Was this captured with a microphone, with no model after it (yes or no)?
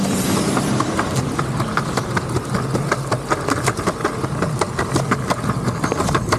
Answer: yes